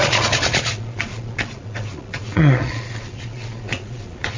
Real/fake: fake